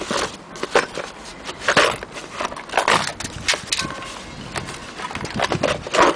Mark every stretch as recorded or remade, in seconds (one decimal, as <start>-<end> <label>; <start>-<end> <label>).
0.0-6.2 recorded